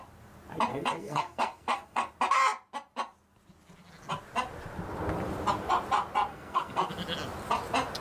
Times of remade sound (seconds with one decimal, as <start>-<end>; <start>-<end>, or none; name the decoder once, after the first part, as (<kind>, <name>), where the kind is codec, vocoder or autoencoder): 0.7-2.1 (codec, SNAC); 6.3-6.9